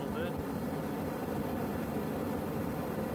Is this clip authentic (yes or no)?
yes